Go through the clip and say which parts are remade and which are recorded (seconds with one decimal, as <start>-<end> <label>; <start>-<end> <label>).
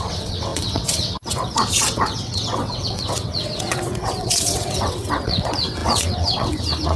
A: 0.0-7.0 remade